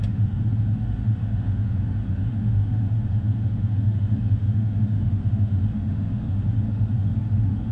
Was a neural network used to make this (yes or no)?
yes